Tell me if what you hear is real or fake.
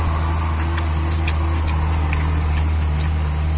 real